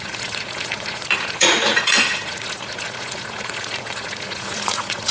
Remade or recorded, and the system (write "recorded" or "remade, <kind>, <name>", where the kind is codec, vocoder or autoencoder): remade, vocoder, Vocos